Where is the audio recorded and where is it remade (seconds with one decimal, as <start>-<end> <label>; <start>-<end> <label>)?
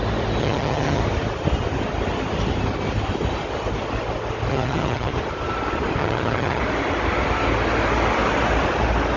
0.0-0.4 recorded; 0.4-1.0 remade; 1.0-4.5 recorded; 4.5-5.1 remade; 5.1-6.0 recorded; 6.0-6.6 remade; 6.6-9.2 recorded